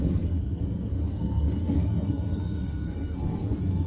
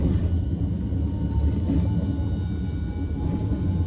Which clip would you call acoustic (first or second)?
second